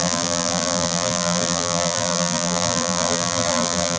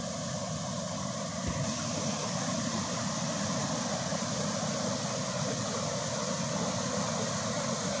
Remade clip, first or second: first